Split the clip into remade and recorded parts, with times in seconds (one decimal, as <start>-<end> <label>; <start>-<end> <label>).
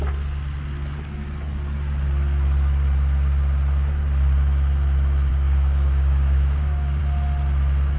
0.0-5.3 recorded; 5.3-7.0 remade; 7.0-8.0 recorded